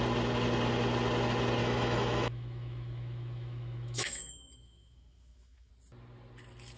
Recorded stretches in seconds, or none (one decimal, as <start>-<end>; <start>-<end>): 0.0-1.6; 5.7-6.8